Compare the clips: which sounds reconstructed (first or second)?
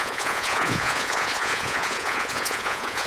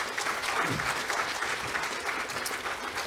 first